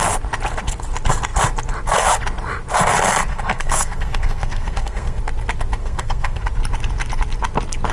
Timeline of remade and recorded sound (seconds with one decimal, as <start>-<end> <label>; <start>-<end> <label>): 0.0-3.3 recorded; 3.3-5.2 remade; 5.2-5.8 recorded; 5.8-6.4 remade; 6.4-7.9 recorded